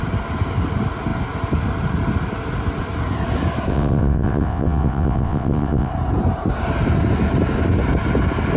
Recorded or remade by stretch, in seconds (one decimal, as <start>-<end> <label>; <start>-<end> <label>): 0.0-3.7 recorded; 3.7-5.9 remade; 5.9-8.6 recorded